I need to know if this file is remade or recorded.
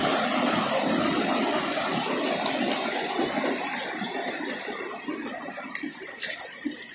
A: recorded